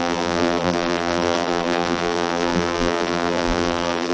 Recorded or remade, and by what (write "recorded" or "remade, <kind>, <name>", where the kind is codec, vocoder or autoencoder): remade, vocoder, BigVGAN v2